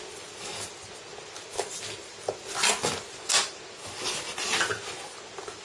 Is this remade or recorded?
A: recorded